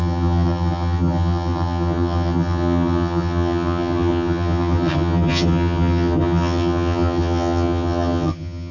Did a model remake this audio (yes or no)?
yes